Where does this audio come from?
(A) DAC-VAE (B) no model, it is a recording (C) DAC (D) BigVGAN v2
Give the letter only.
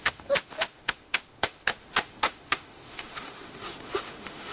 A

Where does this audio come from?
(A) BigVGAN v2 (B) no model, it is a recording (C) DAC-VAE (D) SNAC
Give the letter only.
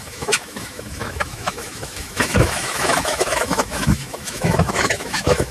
C